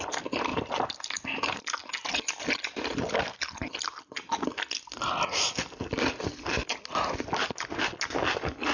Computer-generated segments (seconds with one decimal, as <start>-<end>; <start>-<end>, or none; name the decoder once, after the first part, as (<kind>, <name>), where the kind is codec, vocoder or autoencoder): 0.5-1.6 (vocoder, BigVGAN v2)